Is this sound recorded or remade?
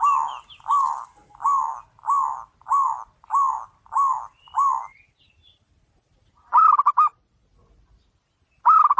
recorded